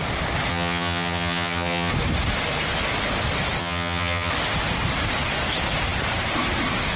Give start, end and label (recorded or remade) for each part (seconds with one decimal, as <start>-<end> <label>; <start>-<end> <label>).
0.0-0.5 recorded; 0.5-1.9 remade; 1.9-3.6 recorded; 3.6-4.3 remade; 4.3-7.0 recorded